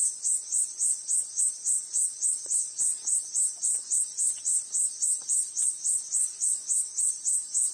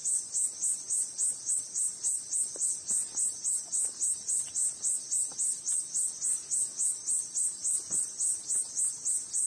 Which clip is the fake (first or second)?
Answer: first